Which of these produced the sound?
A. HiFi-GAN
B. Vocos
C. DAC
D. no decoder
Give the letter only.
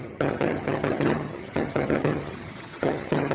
A